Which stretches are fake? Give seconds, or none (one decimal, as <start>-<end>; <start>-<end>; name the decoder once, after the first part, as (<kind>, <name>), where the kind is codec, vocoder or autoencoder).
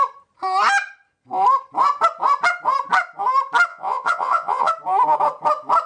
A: 3.7-4.7 (vocoder, Vocos)